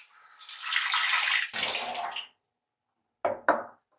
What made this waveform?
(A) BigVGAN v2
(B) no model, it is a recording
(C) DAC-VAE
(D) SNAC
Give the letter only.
B